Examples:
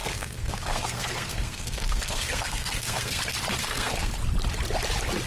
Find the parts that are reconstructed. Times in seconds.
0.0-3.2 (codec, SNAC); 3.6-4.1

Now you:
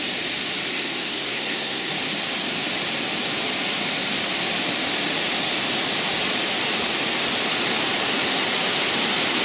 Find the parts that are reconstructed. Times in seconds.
0.7-1.9 (codec, SNAC)

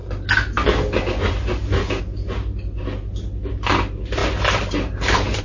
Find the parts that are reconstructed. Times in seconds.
none

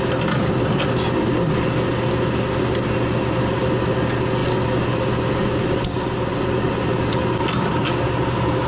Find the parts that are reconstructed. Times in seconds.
none